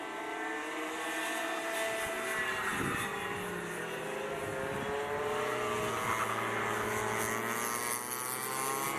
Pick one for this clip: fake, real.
real